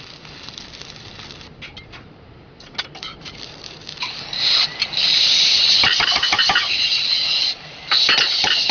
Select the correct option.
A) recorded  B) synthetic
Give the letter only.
A